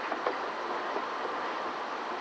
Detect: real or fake real